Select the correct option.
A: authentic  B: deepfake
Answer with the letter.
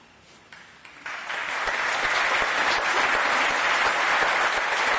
A